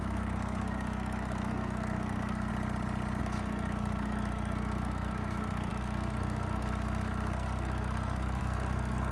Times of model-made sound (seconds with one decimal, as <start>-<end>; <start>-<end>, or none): 0.0-2.5; 3.2-9.1